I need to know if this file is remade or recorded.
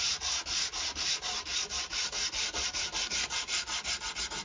remade